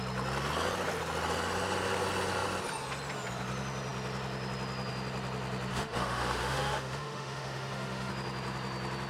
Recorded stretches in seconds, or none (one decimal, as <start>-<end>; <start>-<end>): 0.0-5.7; 8.1-9.1